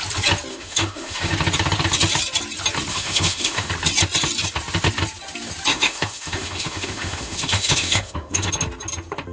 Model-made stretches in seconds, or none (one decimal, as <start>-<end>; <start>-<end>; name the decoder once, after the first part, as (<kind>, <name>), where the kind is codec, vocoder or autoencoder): 0.5-1.3 (autoencoder, DAC-VAE); 2.9-3.7; 5.7-8.5

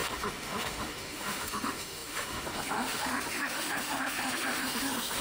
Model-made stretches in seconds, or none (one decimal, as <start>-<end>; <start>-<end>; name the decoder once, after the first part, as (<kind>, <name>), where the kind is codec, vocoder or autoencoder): 0.0-5.2 (autoencoder, DAC-VAE)

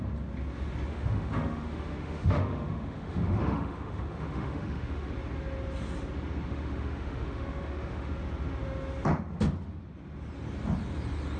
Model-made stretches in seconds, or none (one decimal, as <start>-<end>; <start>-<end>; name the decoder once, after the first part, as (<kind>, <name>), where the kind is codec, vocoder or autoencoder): 0.9-5.1 (autoencoder, DAC-VAE); 6.5-8.1

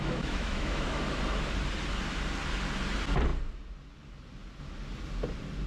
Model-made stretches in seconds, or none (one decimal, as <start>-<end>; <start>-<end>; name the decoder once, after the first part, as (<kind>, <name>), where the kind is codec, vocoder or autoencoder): 0.0-1.0 (autoencoder, DAC-VAE)

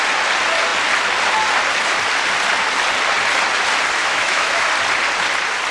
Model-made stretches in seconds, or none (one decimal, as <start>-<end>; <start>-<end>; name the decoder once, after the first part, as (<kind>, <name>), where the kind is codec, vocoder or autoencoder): 4.0-4.7 (autoencoder, DAC-VAE)

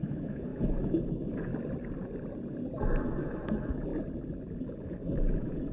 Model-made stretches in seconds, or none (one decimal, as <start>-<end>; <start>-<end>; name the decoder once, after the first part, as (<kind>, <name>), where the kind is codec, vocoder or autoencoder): 0.0-1.5 (autoencoder, DAC-VAE); 3.0-3.9; 4.6-5.7